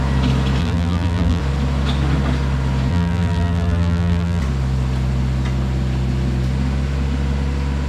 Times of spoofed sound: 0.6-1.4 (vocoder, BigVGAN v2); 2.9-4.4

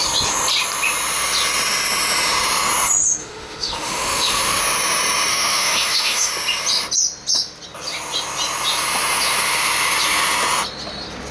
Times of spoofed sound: 3.2-4.6 (autoencoder, DAC-VAE); 5.3-6.3

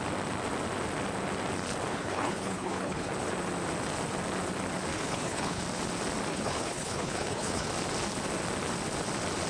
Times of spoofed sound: 1.9-3.1 (codec, HILCodec); 4.9-5.6; 6.3-7.7

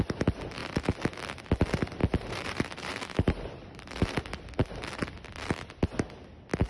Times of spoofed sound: 2.0-3.9 (vocoder, BigVGAN v2)